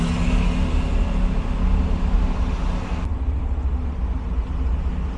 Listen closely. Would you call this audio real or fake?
real